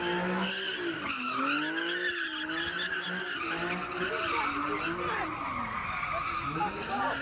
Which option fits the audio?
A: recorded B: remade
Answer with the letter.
A